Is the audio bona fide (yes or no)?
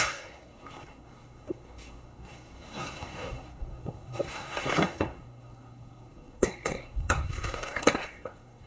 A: no